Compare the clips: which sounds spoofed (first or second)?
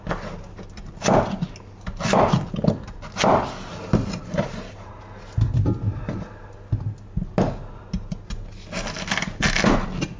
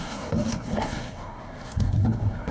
second